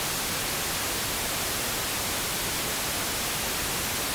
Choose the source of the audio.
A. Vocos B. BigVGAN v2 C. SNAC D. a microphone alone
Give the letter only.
D